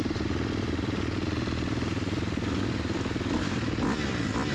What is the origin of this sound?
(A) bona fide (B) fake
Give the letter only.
A